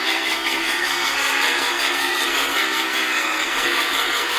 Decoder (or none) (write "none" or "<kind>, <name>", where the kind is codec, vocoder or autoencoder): codec, SNAC